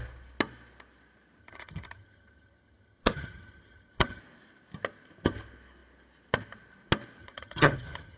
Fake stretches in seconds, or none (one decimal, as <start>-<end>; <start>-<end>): 1.4-4.2; 7.2-8.2